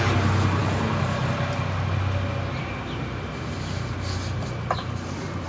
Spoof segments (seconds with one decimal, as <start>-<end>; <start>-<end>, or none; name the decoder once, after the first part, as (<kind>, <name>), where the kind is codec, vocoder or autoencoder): none